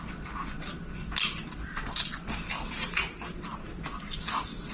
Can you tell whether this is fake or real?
real